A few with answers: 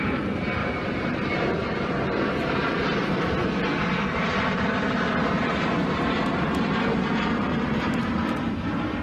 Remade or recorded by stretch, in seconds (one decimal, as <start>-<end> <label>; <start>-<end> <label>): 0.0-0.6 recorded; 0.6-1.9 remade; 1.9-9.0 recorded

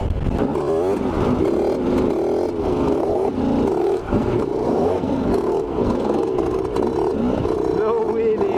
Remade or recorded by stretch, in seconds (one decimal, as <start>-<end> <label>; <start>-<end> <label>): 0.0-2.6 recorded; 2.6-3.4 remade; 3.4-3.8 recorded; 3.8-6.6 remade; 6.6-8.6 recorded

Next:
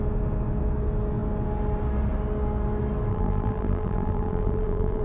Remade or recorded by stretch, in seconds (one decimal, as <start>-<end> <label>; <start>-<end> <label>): 0.0-3.1 recorded; 3.1-5.0 remade